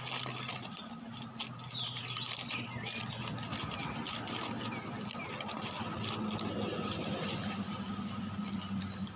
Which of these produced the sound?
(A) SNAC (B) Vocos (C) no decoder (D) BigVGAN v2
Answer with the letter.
C